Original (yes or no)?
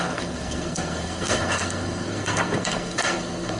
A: no